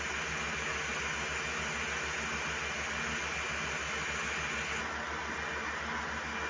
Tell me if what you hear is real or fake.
real